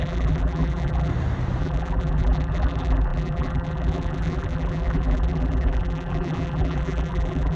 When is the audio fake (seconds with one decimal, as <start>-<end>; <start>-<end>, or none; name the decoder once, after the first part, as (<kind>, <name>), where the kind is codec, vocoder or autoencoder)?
0.0-1.1 (vocoder, BigVGAN v2); 1.6-7.6